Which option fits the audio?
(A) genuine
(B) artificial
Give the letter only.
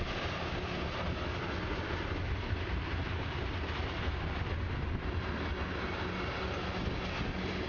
A